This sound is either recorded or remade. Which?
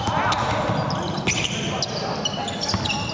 recorded